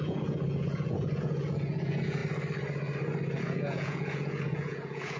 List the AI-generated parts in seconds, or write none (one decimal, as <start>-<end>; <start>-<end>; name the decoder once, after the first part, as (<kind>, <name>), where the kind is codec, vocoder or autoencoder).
0.0-2.2 (vocoder, Vocos); 3.4-5.2